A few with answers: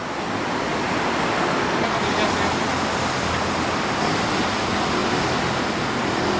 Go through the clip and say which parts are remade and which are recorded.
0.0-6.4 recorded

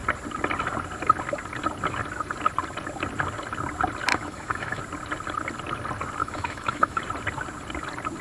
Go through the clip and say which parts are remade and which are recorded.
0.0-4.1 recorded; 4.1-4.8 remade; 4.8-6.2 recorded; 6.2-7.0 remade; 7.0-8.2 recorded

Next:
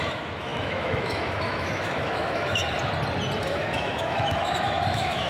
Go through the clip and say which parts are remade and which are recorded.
0.0-2.6 remade; 2.6-3.4 recorded; 3.4-5.3 remade